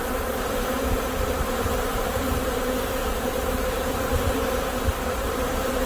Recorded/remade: remade